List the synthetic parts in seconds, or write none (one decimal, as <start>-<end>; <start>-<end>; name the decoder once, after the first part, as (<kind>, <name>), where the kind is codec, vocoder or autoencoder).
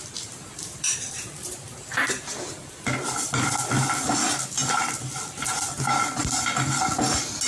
0.4-2.8 (vocoder, BigVGAN v2)